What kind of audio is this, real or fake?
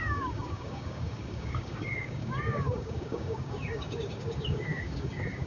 fake